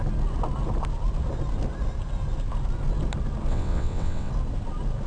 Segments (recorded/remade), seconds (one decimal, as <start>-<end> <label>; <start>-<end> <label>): 0.0-3.5 recorded; 3.5-4.3 remade; 4.3-5.1 recorded